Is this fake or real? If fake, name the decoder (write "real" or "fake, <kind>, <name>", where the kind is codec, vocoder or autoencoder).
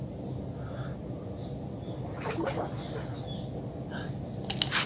real